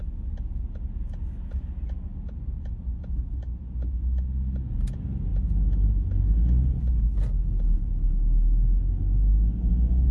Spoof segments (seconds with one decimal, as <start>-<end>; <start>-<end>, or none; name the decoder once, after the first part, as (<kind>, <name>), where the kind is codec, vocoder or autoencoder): none